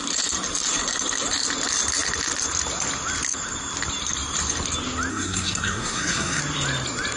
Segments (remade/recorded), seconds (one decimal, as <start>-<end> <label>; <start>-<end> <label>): 0.0-5.1 recorded; 5.1-6.4 remade; 6.4-7.2 recorded